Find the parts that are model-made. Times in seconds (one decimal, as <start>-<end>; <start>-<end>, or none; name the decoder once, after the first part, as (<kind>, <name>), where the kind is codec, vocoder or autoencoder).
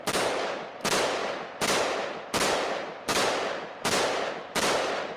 none